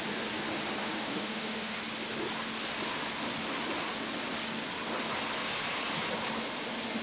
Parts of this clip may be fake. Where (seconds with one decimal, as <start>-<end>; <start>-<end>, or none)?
0.8-1.8